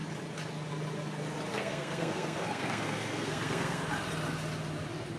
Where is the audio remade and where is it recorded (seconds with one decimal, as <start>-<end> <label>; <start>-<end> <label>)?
0.0-1.5 recorded; 1.5-3.8 remade; 3.8-5.2 recorded